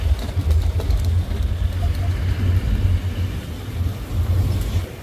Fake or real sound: real